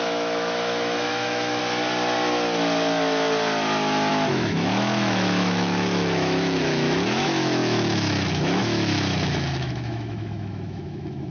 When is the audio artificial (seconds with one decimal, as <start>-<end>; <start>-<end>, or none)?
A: 0.0-1.6; 4.1-11.3